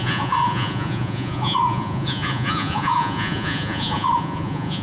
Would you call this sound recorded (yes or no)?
no